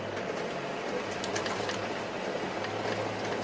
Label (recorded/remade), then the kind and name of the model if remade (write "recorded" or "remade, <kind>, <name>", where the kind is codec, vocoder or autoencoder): recorded